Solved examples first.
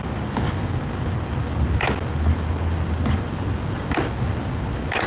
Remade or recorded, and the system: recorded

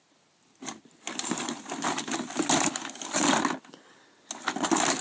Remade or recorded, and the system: recorded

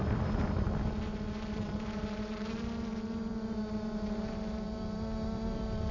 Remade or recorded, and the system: remade, vocoder, BigVGAN v2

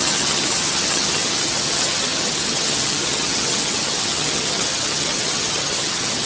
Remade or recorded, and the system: remade, vocoder, HiFi-GAN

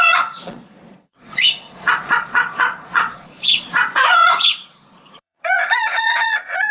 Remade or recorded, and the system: remade, vocoder, Vocos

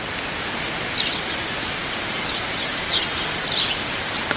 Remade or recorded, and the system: recorded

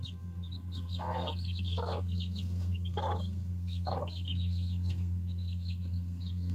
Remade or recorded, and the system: remade, codec, SNAC